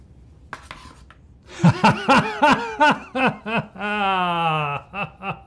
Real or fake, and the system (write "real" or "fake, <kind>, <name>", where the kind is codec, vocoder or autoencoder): real